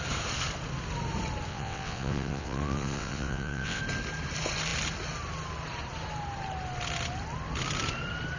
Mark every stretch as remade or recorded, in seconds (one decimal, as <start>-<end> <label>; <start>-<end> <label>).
0.0-1.5 recorded; 1.5-3.8 remade; 3.8-8.4 recorded